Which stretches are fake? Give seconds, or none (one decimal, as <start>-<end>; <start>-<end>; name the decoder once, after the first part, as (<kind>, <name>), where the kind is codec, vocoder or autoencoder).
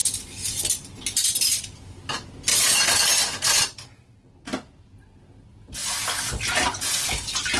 none